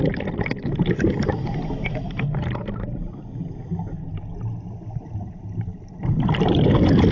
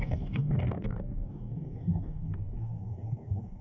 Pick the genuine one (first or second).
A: first